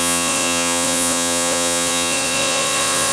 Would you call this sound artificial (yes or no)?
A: yes